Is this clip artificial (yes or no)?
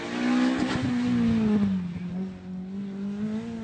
no